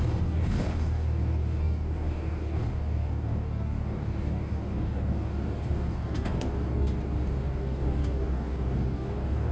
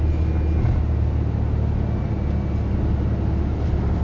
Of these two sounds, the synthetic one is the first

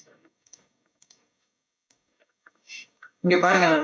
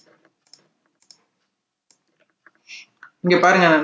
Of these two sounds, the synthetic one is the first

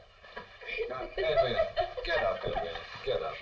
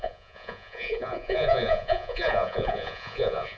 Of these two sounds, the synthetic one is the second